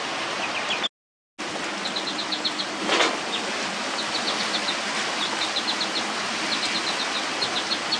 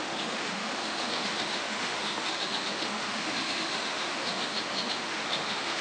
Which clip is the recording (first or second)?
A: first